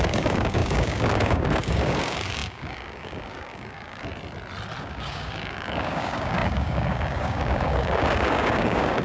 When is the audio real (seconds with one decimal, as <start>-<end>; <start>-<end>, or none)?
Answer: 4.1-4.8